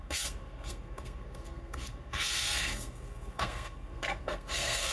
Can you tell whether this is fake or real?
fake